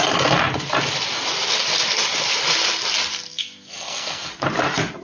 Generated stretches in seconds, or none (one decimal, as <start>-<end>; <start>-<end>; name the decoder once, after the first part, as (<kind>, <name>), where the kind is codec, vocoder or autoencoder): 3.3-4.3 (codec, SNAC)